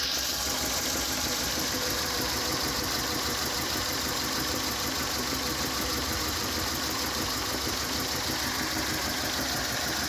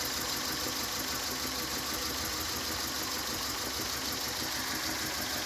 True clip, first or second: second